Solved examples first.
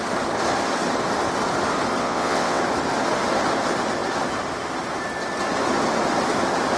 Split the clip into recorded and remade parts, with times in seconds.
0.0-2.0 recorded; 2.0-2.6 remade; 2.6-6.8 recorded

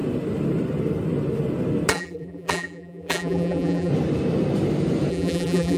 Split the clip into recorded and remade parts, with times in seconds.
0.0-1.9 recorded; 1.9-3.9 remade; 3.9-5.1 recorded; 5.1-5.8 remade

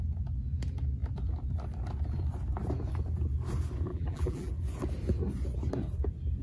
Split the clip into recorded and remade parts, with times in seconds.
0.0-3.9 recorded; 3.9-4.5 remade; 4.5-6.4 recorded

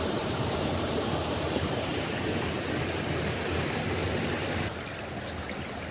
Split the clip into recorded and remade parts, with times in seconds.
0.0-1.9 remade; 1.9-5.4 recorded; 5.4-5.9 remade

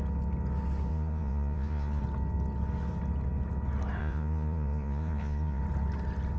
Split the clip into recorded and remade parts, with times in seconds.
0.0-0.9 recorded; 0.9-2.0 remade; 2.0-4.0 recorded; 4.0-5.6 remade; 5.6-6.4 recorded

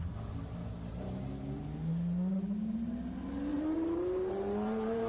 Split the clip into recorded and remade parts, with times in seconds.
0.0-3.5 recorded; 3.5-5.1 remade

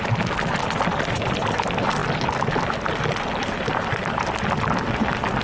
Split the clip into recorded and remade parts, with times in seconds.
0.0-5.4 recorded

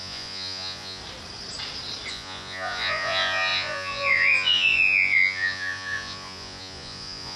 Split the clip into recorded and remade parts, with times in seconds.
0.0-1.0 remade; 1.0-2.1 recorded; 2.1-7.4 remade